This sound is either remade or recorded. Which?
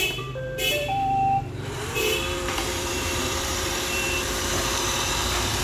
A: remade